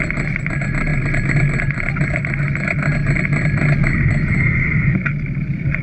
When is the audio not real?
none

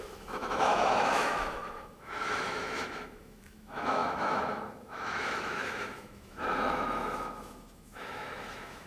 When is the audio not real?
0.0-8.9 (autoencoder, DAC-VAE)

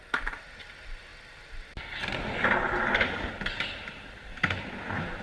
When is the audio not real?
none

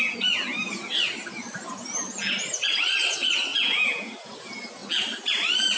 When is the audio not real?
3.5-4.1 (vocoder, Vocos)

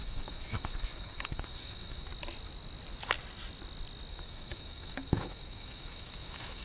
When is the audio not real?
0.0-2.1 (autoencoder, DAC-VAE); 4.1-6.6